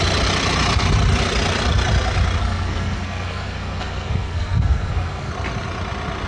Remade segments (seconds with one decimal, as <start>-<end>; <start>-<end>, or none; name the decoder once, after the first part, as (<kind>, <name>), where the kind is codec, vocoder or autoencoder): 2.4-5.3 (codec, SNAC)